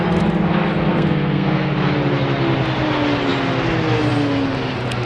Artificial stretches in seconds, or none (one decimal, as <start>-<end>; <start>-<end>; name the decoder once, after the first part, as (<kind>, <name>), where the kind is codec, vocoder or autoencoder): 0.9-1.7 (codec, SNAC)